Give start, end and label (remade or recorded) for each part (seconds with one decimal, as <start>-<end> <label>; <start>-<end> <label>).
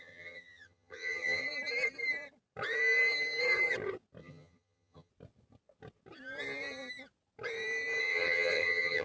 0.0-1.4 remade; 1.4-4.2 recorded; 4.2-5.1 remade; 5.1-8.0 recorded; 8.0-9.0 remade